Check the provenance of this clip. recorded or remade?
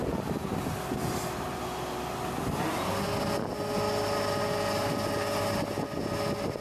recorded